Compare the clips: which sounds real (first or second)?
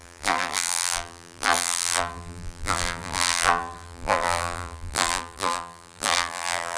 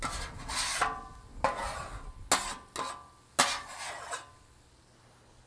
second